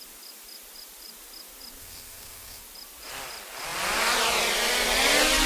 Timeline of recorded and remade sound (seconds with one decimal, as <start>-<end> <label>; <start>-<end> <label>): 0.0-1.8 recorded; 1.8-2.6 remade; 2.6-5.5 recorded